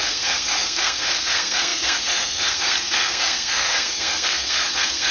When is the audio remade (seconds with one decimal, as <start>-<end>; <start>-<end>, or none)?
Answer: 0.0-5.1